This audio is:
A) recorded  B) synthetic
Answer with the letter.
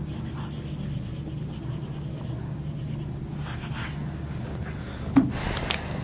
A